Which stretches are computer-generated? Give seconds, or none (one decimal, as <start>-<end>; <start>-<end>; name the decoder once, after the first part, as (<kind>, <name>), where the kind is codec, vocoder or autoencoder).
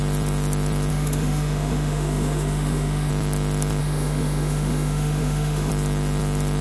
0.9-3.1 (autoencoder, DAC-VAE); 3.8-5.7